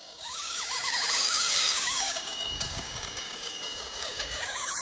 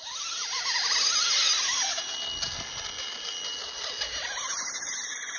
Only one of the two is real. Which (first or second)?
second